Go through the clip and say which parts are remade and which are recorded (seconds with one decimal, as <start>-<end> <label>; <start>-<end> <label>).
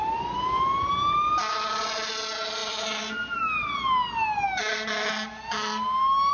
0.0-6.3 recorded